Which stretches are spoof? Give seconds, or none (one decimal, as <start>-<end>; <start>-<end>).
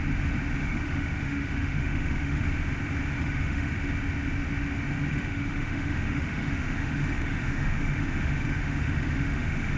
0.6-2.4; 3.2-3.7; 5.1-9.8